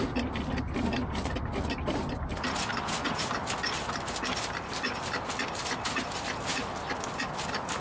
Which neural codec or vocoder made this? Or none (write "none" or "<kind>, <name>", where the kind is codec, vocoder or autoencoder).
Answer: none